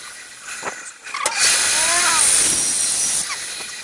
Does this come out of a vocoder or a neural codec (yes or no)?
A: no